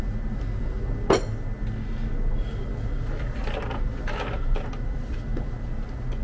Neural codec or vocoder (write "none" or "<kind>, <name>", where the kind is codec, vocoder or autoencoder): none